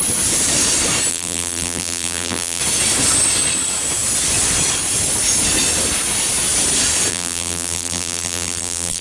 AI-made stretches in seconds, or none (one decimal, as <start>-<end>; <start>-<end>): 1.1-2.6; 7.1-9.0